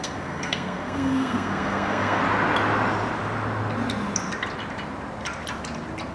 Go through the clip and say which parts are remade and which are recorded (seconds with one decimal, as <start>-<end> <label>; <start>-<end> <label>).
0.0-2.2 remade; 2.2-6.1 recorded